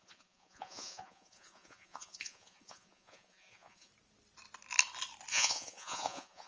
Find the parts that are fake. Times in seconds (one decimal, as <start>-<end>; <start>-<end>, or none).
0.0-3.9; 5.3-6.5